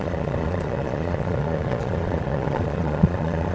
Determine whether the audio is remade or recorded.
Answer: remade